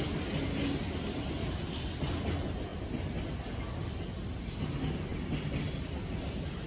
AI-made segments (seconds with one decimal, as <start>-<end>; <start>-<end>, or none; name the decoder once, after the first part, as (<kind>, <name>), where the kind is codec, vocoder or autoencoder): none